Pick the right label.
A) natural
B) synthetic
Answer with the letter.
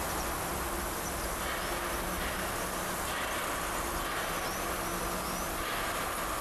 A